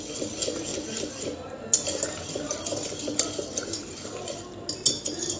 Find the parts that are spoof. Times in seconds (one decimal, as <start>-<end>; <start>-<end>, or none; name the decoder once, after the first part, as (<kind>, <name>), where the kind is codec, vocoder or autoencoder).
none